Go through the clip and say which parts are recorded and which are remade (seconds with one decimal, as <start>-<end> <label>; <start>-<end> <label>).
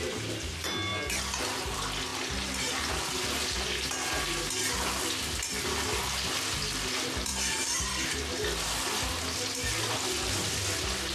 0.0-11.1 recorded